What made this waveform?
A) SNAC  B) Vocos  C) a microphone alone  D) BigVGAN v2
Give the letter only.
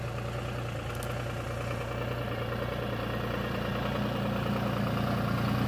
C